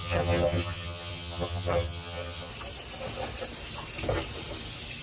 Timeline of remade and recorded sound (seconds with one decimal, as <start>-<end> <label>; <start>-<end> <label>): 0.0-2.5 remade; 2.5-5.0 recorded